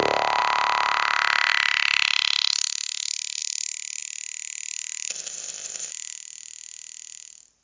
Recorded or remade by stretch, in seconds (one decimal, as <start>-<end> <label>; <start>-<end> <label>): 0.0-5.1 recorded; 5.1-5.9 remade; 5.9-7.6 recorded